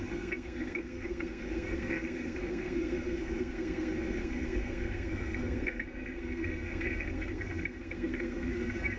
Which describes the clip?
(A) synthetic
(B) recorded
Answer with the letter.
A